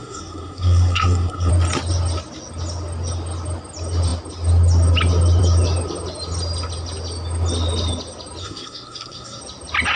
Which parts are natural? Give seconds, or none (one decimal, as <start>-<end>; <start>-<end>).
1.5-8.4; 9.4-10.0